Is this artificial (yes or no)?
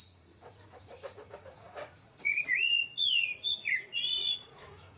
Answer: yes